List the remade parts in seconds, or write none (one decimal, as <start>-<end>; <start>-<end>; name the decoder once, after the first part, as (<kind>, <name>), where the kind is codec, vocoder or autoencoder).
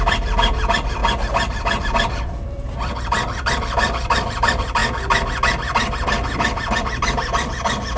0.0-1.0 (vocoder, BigVGAN v2); 1.8-4.8; 6.8-8.0